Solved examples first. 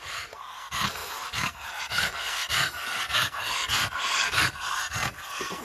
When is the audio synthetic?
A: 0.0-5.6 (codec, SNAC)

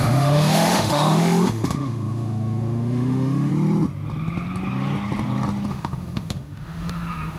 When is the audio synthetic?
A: 0.0-3.5 (autoencoder, DAC-VAE); 5.7-7.4

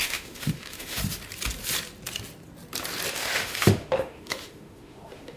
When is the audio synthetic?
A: 0.0-1.0 (autoencoder, DAC-VAE); 3.1-5.4

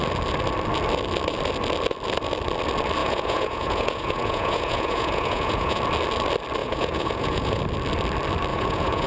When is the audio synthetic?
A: 3.0-5.8 (vocoder, Vocos); 6.6-7.6; 8.5-9.1

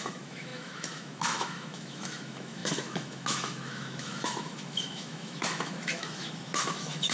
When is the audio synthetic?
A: 0.0-7.1 (autoencoder, DAC-VAE)

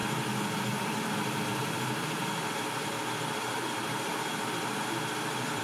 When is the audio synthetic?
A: 0.8-4.1 (vocoder, BigVGAN v2); 5.1-5.6

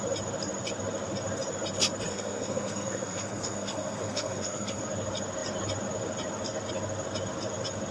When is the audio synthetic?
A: 2.1-4.8 (codec, SNAC)